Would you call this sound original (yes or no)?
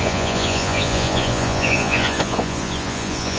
no